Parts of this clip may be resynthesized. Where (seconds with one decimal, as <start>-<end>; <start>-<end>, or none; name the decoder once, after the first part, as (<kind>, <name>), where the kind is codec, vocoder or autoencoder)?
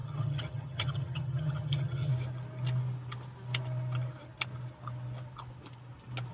0.0-2.1 (vocoder, HiFi-GAN)